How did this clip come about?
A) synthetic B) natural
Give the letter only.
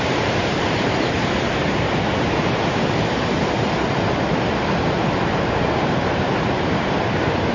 A